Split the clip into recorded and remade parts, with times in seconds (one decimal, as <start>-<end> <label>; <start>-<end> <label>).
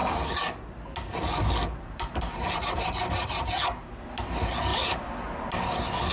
0.0-1.6 recorded; 1.6-3.9 remade; 3.9-4.7 recorded; 4.7-5.4 remade; 5.4-6.1 recorded